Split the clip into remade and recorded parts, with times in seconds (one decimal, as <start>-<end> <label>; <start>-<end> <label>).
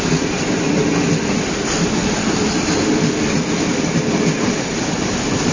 0.0-5.5 recorded